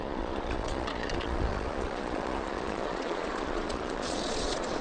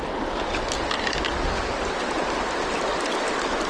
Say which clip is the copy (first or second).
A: first